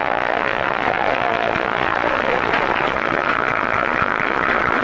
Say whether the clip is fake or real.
fake